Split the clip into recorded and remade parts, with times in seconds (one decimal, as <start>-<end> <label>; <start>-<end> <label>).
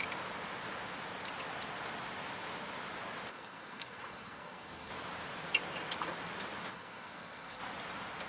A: 0.0-3.3 recorded; 3.3-4.9 remade; 4.9-6.7 recorded; 6.7-7.6 remade; 7.6-8.3 recorded